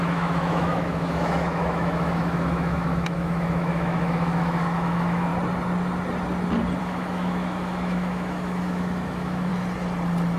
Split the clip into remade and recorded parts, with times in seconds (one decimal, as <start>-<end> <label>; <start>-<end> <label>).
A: 0.0-5.3 remade; 5.3-6.8 recorded; 6.8-9.5 remade; 9.5-10.4 recorded